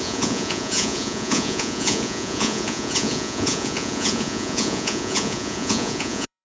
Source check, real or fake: fake